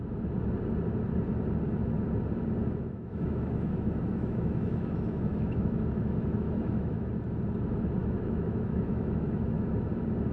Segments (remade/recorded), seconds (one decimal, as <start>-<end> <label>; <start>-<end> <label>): 0.0-2.6 recorded; 2.6-7.1 remade; 7.1-8.0 recorded; 8.0-9.9 remade; 9.9-10.3 recorded